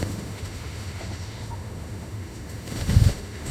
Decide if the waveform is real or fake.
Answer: fake